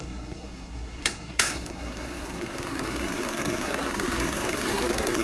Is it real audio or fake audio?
fake